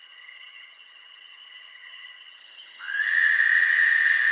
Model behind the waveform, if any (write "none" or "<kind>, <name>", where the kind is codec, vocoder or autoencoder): vocoder, HiFi-GAN